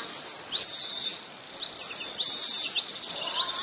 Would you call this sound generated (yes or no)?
no